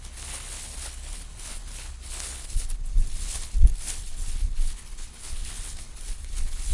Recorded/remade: remade